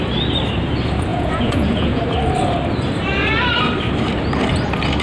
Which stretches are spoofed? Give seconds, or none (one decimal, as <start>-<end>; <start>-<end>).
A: 1.1-2.0